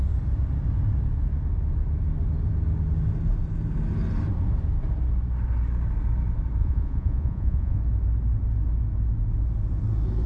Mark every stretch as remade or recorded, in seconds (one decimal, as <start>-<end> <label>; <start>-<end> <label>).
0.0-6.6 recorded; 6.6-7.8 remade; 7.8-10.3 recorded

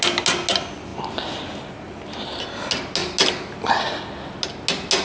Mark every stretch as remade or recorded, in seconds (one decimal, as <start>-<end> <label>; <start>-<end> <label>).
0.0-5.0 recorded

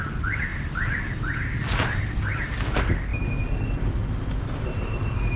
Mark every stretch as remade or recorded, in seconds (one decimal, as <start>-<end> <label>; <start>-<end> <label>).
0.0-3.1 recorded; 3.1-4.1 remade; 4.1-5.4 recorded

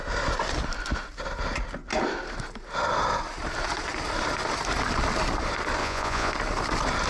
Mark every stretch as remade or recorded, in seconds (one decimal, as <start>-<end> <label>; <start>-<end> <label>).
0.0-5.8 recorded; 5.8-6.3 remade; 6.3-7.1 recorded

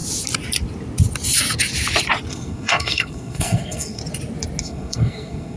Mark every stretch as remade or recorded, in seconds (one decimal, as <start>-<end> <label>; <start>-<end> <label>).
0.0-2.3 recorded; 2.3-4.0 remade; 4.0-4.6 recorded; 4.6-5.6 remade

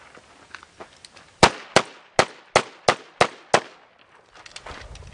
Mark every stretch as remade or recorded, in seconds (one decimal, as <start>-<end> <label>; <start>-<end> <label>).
0.0-5.1 recorded